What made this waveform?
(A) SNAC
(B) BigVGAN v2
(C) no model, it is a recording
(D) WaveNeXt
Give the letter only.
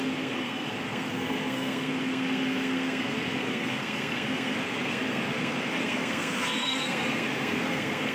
A